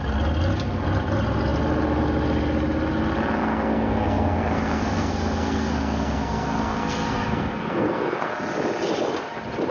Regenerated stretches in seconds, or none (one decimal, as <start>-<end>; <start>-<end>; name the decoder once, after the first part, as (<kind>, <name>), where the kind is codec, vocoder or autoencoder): 3.4-8.3 (codec, SNAC)